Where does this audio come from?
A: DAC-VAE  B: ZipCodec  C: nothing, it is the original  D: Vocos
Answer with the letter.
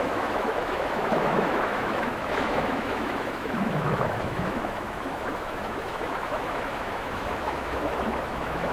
A